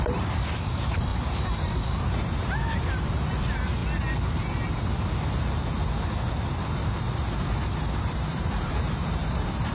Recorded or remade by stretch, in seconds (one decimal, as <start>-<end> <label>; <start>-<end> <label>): 0.0-3.8 remade; 3.8-8.0 recorded; 8.0-9.7 remade